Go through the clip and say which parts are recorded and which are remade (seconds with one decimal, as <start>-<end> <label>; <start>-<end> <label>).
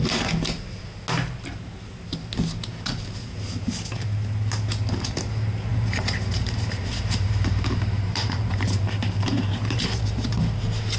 0.0-5.7 recorded; 5.7-10.6 remade; 10.6-11.0 recorded